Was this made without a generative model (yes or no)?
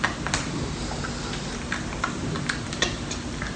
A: yes